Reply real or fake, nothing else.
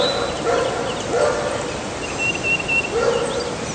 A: real